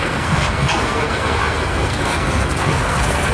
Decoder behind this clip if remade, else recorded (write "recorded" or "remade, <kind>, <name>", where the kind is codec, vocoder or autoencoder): remade, codec, SNAC